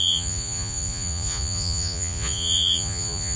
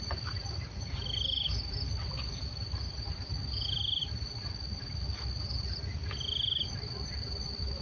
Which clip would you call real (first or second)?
second